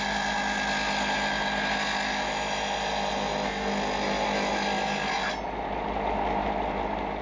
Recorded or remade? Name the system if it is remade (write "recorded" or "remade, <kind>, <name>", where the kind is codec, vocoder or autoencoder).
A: recorded